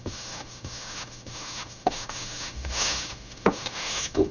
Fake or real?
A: fake